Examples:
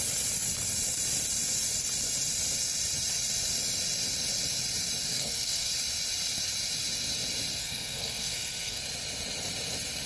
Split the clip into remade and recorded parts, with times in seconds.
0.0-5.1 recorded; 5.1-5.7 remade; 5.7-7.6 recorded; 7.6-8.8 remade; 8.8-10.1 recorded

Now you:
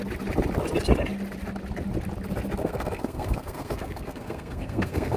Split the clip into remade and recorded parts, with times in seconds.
0.0-2.6 recorded; 2.6-5.2 remade

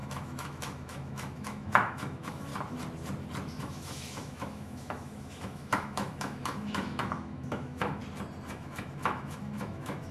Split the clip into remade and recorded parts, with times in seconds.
0.0-2.5 remade; 2.5-3.6 recorded; 3.6-8.0 remade; 8.0-8.5 recorded; 8.5-10.1 remade

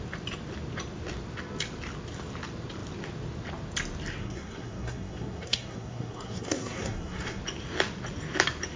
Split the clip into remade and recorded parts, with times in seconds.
0.0-4.2 recorded; 4.2-7.4 remade; 7.4-8.8 recorded

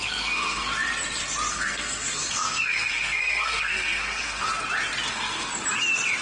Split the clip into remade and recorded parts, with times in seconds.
0.0-0.7 remade; 0.7-1.5 recorded; 1.5-4.5 remade; 4.5-5.1 recorded; 5.1-5.5 remade; 5.5-6.2 recorded